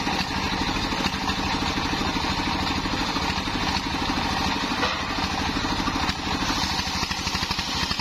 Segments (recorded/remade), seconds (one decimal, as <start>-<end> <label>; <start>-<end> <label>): 0.0-8.0 recorded